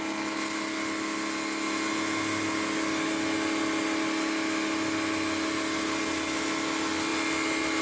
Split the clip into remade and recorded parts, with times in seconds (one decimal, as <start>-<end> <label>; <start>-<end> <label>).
0.0-7.8 recorded